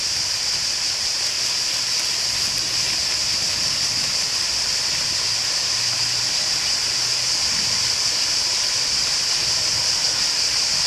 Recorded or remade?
recorded